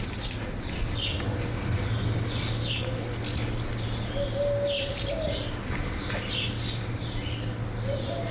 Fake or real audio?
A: real